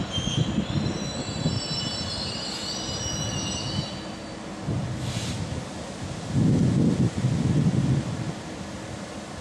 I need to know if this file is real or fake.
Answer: real